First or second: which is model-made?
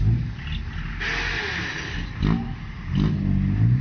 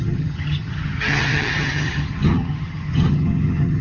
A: second